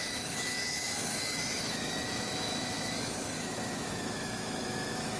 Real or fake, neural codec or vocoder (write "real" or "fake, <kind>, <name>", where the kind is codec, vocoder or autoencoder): fake, autoencoder, DAC-VAE